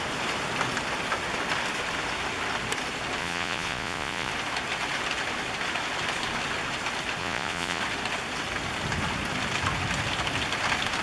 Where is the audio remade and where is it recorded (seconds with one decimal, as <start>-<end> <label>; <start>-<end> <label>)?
0.0-3.2 recorded; 3.2-4.3 remade; 4.3-7.2 recorded; 7.2-7.8 remade; 7.8-11.0 recorded